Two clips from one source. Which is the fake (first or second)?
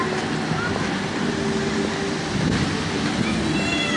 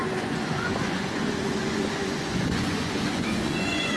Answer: second